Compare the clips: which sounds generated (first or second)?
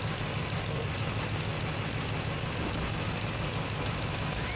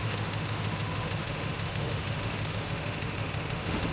second